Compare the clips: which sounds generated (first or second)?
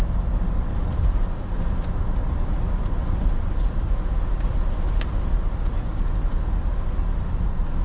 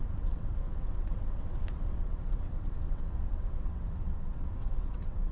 second